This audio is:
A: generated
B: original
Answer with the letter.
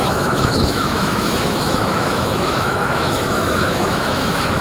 A